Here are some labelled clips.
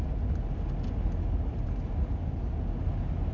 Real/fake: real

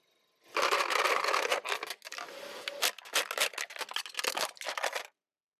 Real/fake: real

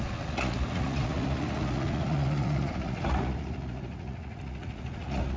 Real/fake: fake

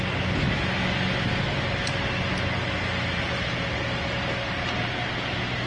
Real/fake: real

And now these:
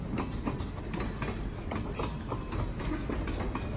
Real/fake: real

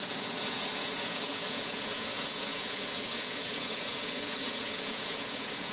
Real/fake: fake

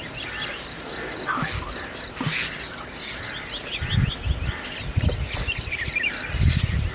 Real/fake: real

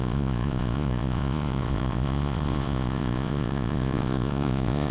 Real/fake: fake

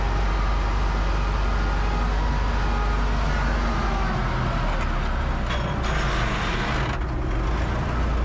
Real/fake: real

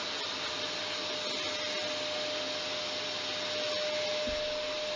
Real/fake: real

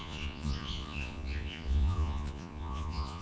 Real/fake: fake